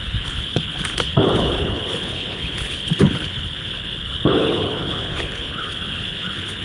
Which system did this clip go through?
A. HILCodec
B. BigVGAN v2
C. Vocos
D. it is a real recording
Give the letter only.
A